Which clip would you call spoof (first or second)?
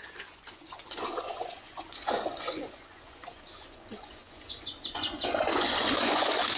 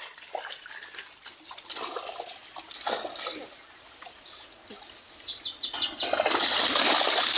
first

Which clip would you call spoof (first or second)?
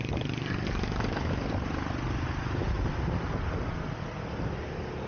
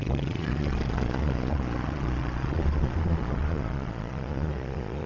second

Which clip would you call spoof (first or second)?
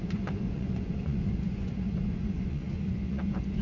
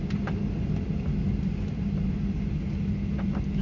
first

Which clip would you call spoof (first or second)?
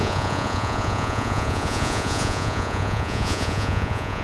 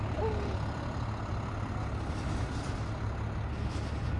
first